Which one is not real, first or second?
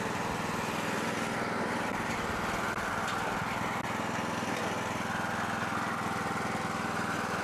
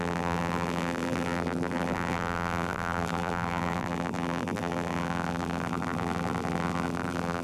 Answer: second